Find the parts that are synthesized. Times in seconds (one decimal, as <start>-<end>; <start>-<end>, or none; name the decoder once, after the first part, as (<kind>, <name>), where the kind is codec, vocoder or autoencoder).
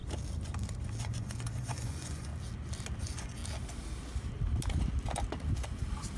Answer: 1.0-2.3 (vocoder, Vocos); 3.0-3.4